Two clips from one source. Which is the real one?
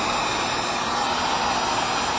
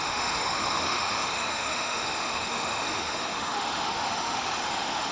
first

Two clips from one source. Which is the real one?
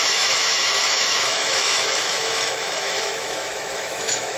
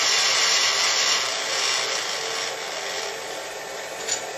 second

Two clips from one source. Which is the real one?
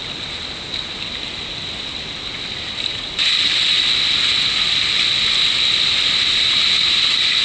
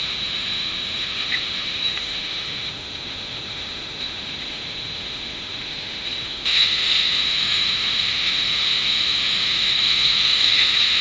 first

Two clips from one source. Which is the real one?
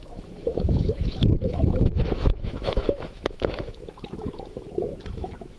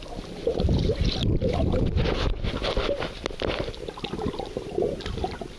second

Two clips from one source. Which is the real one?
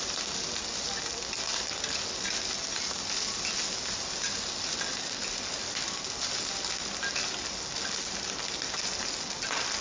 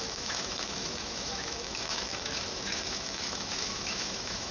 first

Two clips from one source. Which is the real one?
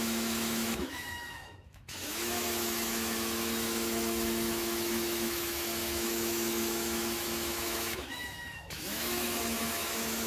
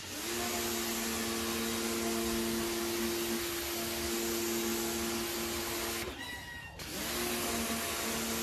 second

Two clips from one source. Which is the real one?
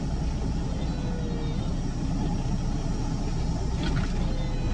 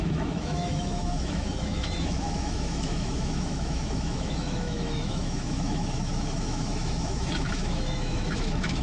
first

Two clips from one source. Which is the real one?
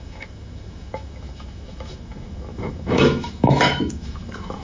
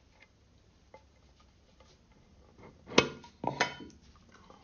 second